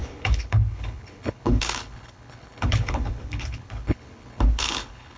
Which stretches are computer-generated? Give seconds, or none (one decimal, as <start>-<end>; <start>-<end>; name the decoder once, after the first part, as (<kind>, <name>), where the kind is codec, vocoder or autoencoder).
0.0-5.2 (codec, HILCodec)